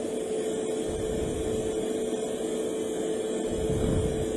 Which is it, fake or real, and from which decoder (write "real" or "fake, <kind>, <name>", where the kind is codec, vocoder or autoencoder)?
real